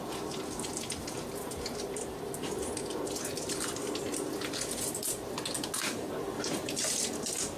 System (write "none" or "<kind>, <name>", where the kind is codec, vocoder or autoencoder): none